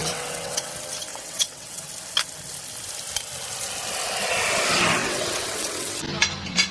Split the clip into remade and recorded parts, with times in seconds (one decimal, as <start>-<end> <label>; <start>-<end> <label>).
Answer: 0.0-0.7 remade; 0.7-1.1 recorded; 1.1-1.9 remade; 1.9-5.0 recorded; 5.0-5.9 remade; 5.9-6.7 recorded